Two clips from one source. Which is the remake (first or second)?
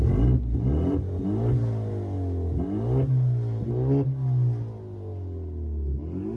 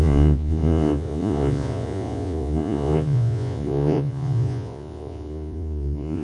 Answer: second